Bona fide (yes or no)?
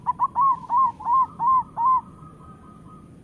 yes